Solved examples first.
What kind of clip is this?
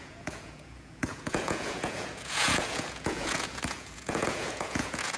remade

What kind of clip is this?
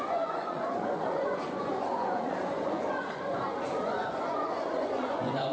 remade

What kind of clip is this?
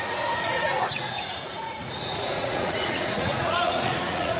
remade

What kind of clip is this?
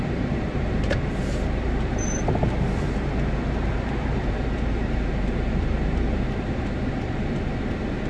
remade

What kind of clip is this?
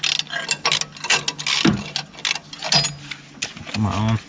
recorded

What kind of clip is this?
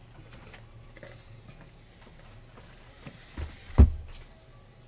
recorded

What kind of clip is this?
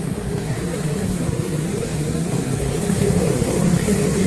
remade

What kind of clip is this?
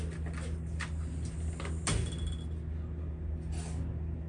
recorded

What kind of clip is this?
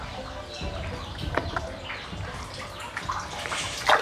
recorded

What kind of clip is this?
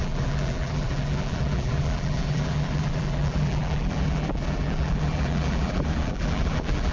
remade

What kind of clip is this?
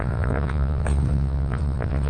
remade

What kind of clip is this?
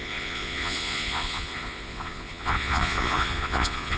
remade